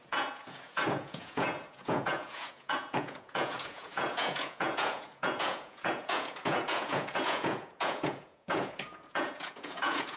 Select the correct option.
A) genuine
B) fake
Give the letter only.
B